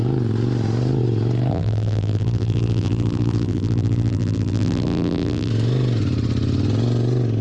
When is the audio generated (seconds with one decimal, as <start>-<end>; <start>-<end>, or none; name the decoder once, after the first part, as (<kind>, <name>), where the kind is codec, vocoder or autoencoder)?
1.5-5.5 (vocoder, BigVGAN v2)